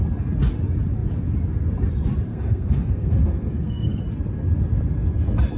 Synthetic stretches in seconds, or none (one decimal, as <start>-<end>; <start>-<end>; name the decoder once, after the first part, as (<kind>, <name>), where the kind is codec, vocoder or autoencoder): 2.3-4.0 (codec, SNAC)